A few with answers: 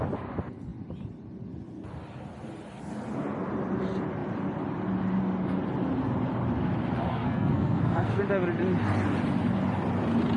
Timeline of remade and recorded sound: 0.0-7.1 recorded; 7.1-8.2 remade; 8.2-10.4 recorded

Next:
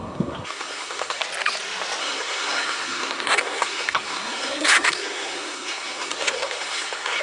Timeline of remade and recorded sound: 0.0-1.2 remade; 1.2-2.0 recorded; 2.0-7.2 remade